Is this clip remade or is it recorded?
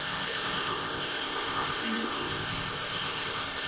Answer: remade